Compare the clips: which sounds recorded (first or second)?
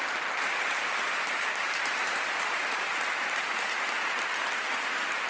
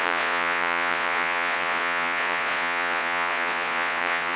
first